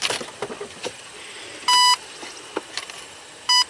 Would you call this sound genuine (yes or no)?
yes